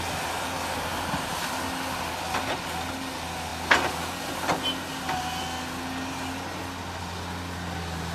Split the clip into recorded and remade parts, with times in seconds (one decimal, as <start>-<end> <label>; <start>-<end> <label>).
0.0-8.1 recorded